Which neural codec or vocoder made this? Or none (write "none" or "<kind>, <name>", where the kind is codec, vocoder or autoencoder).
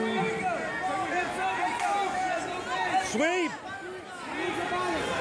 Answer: none